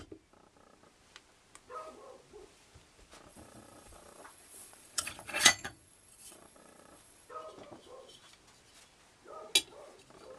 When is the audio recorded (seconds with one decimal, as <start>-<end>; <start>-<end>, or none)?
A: 0.0-3.3; 7.3-10.4